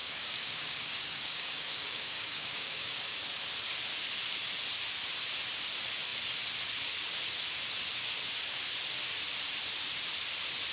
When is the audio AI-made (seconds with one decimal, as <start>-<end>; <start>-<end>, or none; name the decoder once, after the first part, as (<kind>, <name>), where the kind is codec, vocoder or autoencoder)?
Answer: 0.0-3.2 (codec, DAC)